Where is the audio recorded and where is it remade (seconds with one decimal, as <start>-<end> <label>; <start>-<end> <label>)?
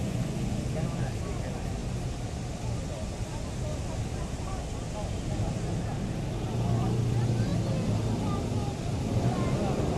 0.0-0.5 remade; 0.5-10.0 recorded